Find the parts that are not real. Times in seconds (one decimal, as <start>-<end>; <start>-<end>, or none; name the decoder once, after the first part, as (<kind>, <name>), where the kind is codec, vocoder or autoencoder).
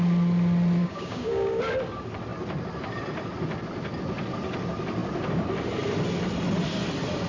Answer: 0.8-1.6 (codec, DAC)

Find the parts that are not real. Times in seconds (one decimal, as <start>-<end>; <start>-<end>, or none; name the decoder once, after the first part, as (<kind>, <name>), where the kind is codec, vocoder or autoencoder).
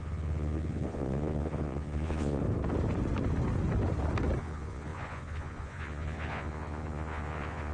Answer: 0.0-2.4 (vocoder, Vocos); 4.4-7.7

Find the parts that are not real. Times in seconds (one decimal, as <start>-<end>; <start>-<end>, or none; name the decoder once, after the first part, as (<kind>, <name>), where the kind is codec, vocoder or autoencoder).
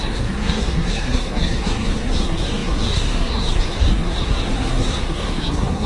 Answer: 0.0-5.9 (codec, SNAC)